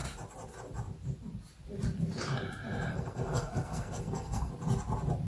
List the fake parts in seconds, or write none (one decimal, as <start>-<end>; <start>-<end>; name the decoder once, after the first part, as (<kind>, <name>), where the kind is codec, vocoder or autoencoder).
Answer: 2.9-4.5 (codec, SNAC)